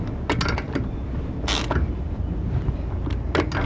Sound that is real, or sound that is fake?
real